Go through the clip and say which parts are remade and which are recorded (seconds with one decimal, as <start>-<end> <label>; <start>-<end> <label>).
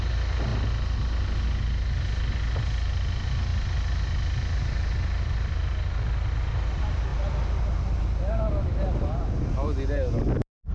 0.0-10.7 recorded